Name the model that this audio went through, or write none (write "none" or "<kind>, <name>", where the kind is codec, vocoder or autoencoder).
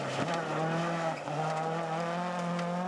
none